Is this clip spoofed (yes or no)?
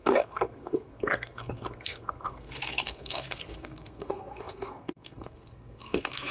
yes